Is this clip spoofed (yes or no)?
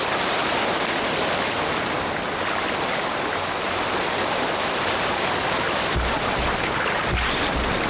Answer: no